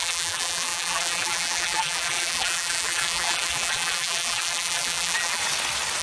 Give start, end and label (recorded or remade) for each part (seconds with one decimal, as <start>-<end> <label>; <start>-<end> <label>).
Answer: 0.0-5.4 remade; 5.4-6.0 recorded